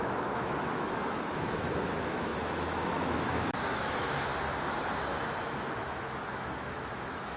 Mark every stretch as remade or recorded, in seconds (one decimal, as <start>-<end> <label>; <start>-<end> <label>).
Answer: 0.0-4.3 remade; 4.3-5.4 recorded; 5.4-7.4 remade